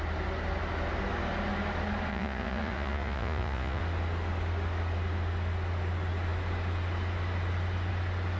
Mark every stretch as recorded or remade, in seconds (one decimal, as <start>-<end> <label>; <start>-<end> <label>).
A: 0.0-2.1 recorded; 2.1-3.8 remade; 3.8-8.4 recorded